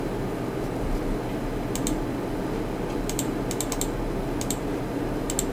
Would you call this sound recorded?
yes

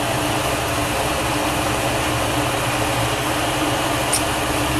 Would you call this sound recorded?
yes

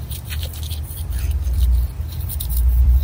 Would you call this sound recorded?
no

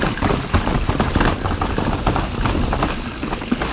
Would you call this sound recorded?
yes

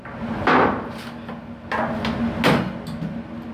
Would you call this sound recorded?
yes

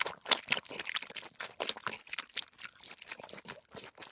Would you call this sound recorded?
yes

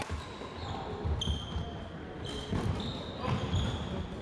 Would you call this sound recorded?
yes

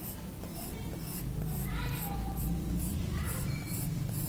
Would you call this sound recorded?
no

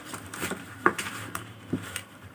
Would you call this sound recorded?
no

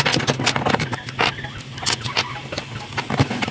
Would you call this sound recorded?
yes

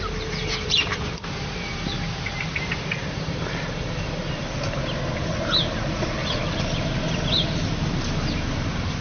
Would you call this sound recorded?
no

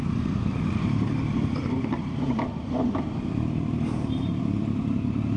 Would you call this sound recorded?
no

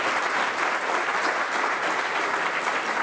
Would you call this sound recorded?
no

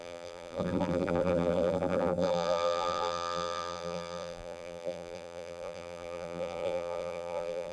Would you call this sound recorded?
no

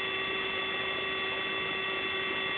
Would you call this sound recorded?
yes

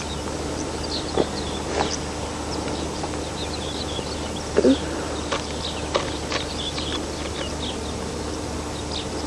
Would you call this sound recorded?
yes